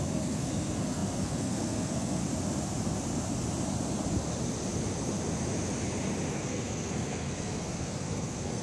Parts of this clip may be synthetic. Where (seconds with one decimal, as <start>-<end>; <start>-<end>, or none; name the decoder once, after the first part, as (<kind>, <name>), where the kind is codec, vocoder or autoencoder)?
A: 0.0-2.2 (codec, SNAC); 6.3-8.6